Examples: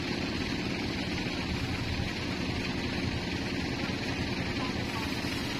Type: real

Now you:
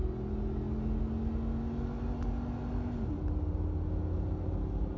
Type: real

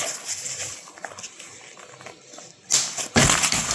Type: real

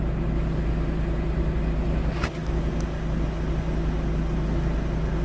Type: real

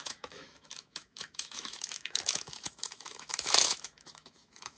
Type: fake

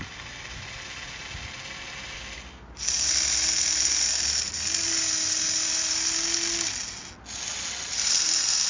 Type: real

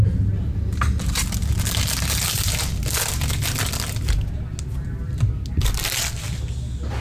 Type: real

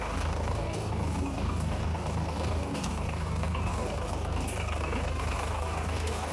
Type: fake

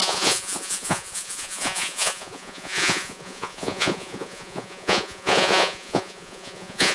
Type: fake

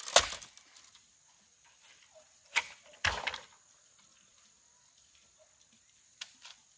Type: real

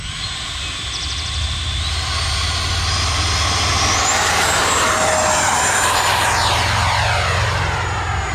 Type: real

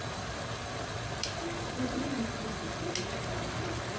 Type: real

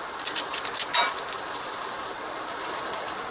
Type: real